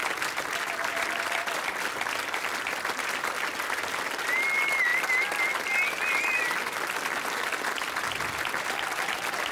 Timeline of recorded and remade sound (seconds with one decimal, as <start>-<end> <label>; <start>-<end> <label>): 0.0-9.5 recorded